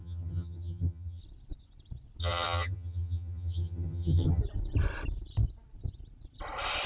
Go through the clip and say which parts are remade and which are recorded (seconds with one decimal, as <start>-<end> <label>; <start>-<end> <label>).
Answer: 0.0-1.2 remade; 1.2-2.2 recorded; 2.2-4.4 remade; 4.4-6.9 recorded